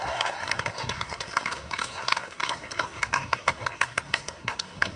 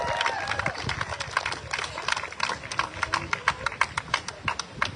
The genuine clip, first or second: second